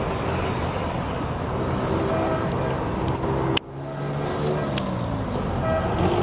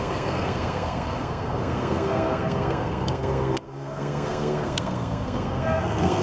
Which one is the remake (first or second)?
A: second